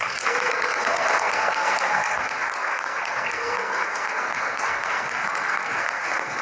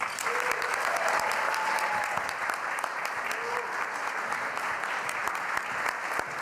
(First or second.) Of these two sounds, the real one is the second